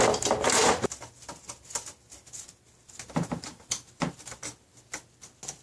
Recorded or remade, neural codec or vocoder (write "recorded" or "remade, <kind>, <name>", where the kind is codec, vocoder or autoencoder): recorded